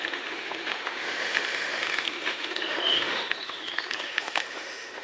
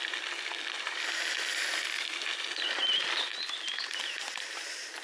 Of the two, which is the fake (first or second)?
first